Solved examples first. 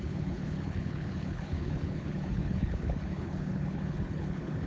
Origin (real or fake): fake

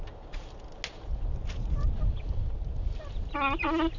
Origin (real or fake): real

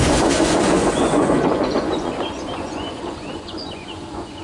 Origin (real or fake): fake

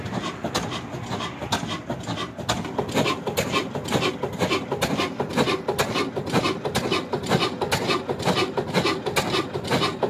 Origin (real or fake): real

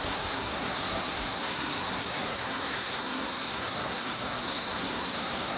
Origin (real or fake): fake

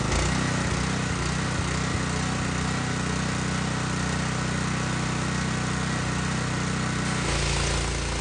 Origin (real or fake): real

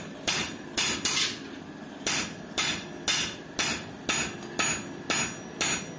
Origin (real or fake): real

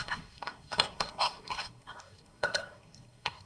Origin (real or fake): fake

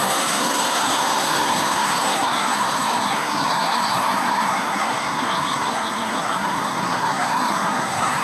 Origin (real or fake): fake